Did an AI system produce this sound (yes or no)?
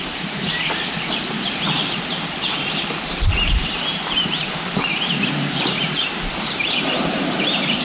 yes